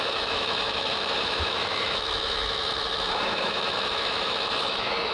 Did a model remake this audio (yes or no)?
yes